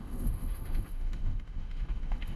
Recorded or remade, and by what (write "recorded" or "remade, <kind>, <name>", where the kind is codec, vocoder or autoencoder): remade, autoencoder, DAC-VAE